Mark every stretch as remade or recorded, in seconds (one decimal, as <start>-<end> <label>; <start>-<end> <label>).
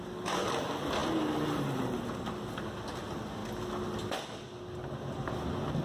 0.0-5.8 recorded